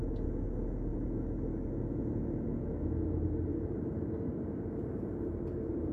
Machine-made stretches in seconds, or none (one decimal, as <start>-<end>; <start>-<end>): 3.5-5.9